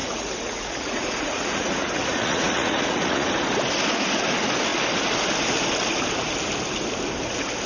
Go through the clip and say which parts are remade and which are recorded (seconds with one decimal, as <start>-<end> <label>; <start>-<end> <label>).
0.0-3.3 remade; 3.3-7.7 recorded